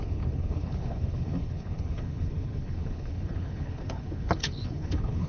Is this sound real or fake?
fake